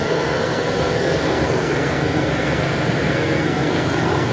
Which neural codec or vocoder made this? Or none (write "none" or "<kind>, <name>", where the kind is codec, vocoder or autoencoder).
codec, SNAC